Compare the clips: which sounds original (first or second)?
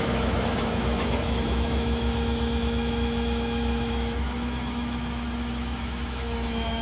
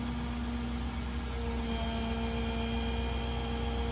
second